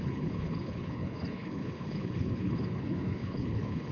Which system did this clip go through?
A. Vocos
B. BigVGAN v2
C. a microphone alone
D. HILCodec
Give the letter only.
D